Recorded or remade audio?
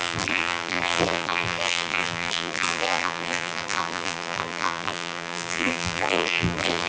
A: remade